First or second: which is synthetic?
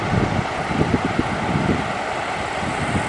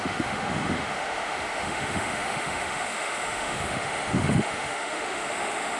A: second